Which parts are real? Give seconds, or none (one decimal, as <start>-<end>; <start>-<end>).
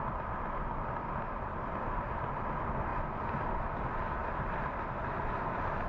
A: 0.0-2.9; 3.7-4.2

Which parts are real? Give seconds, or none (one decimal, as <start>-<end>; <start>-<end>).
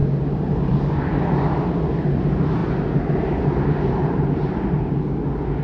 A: 0.9-2.6; 5.0-5.6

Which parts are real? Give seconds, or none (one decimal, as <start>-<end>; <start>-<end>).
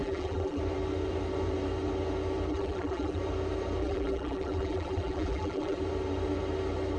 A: 0.6-2.5; 3.2-3.8; 5.8-7.0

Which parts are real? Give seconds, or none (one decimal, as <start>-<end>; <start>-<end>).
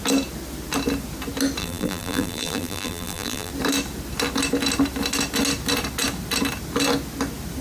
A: 0.0-1.6; 3.5-7.6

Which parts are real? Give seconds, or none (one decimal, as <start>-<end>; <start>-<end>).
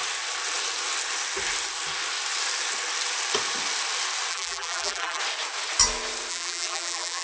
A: 0.0-4.3; 5.2-6.3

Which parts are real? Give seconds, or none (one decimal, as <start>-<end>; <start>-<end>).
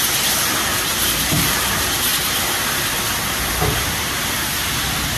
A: 0.0-0.9; 1.7-5.2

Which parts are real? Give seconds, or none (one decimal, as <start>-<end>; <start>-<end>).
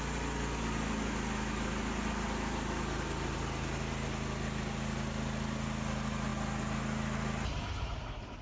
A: 0.0-8.4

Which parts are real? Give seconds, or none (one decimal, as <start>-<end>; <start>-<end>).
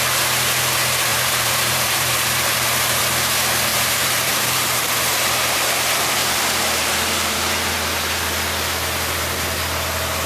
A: 0.0-1.1; 3.0-3.7; 5.6-6.2; 7.7-10.3